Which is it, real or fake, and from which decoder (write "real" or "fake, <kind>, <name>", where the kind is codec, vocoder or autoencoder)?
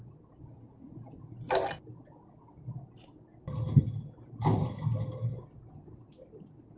real